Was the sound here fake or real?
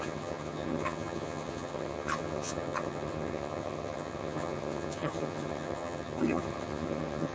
fake